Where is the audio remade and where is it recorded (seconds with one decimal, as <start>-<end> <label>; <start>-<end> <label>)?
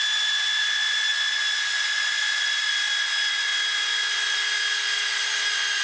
0.0-5.8 recorded